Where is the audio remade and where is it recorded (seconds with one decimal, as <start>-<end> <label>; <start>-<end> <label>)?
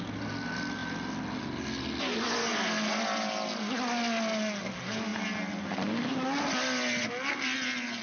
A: 0.0-8.0 recorded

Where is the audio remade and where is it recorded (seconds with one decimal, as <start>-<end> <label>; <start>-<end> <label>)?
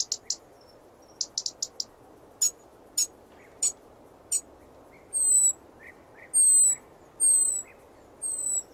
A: 0.0-8.7 recorded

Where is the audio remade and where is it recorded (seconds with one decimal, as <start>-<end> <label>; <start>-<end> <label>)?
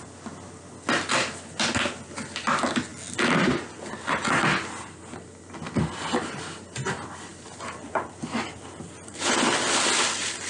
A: 0.0-7.3 recorded; 7.3-9.6 remade; 9.6-10.5 recorded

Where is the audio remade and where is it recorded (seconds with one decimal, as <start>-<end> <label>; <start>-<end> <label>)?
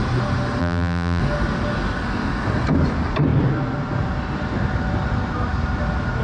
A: 0.0-0.6 recorded; 0.6-1.2 remade; 1.2-6.2 recorded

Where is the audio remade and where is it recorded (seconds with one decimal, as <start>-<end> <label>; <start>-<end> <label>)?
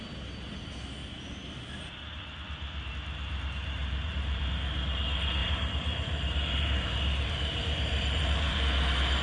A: 0.0-3.8 recorded; 3.8-4.4 remade; 4.4-5.4 recorded; 5.4-8.6 remade; 8.6-9.2 recorded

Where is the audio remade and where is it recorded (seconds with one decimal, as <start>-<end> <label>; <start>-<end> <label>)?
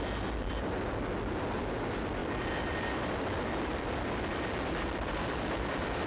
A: 0.0-2.2 recorded; 2.2-6.1 remade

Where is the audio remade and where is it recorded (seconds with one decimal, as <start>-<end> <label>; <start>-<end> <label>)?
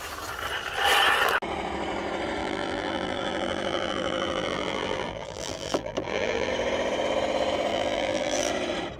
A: 0.0-2.4 recorded; 2.4-6.5 remade; 6.5-7.7 recorded; 7.7-8.5 remade; 8.5-9.0 recorded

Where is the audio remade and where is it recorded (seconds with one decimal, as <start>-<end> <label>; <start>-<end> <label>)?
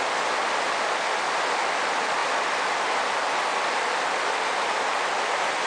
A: 0.0-2.2 recorded; 2.2-2.7 remade; 2.7-3.5 recorded; 3.5-5.7 remade